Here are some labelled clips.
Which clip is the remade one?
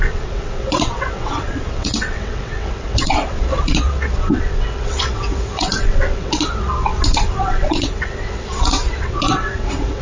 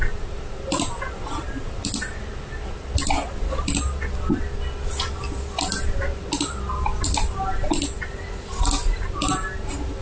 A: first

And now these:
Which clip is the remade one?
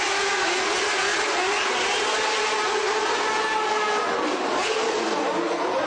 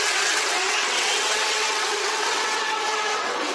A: second